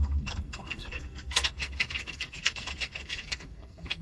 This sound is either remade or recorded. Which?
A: remade